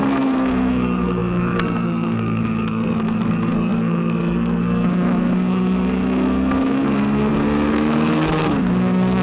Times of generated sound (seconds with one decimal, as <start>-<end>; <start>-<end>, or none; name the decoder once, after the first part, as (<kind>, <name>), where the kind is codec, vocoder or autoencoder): 0.0-9.2 (codec, SNAC)